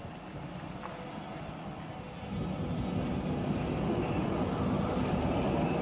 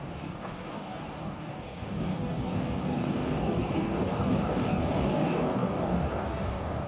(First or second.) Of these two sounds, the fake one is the second